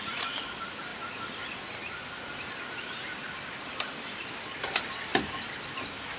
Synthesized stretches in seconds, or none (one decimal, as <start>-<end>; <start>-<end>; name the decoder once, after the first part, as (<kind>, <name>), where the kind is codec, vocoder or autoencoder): none

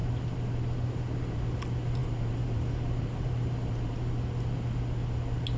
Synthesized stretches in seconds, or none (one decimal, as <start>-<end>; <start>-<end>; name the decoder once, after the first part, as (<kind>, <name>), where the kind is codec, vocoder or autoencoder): 2.0-3.9 (vocoder, BigVGAN v2)